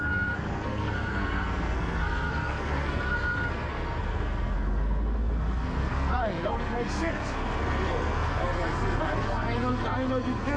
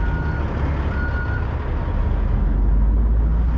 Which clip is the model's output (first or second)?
first